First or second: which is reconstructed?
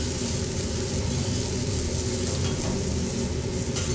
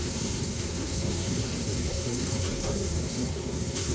second